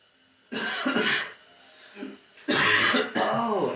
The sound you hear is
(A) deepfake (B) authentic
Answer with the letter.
B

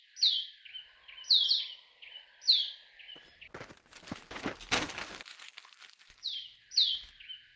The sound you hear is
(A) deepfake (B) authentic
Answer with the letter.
B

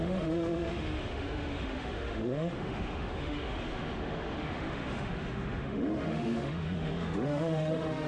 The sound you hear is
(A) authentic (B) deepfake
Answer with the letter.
B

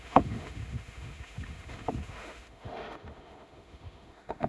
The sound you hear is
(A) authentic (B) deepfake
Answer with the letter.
B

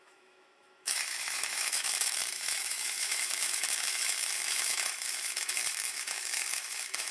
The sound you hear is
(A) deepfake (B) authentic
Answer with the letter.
A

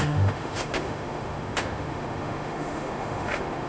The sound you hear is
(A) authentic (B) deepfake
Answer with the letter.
B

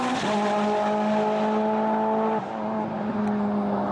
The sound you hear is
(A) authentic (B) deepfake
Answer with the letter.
A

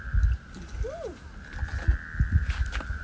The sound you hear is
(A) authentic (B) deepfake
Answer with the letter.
A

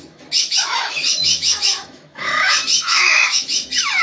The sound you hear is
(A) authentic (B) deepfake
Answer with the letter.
B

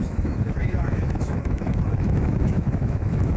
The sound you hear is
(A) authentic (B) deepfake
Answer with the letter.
B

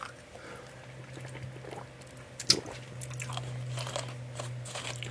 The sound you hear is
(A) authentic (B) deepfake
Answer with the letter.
A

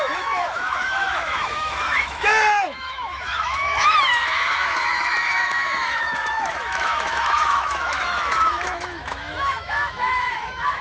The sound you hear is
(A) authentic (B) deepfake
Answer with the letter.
B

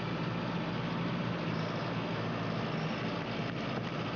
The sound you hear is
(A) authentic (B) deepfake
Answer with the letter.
A